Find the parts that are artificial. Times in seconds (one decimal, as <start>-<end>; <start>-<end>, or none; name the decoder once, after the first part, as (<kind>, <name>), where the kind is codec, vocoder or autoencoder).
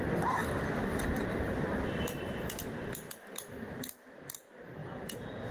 4.8-5.5 (vocoder, Vocos)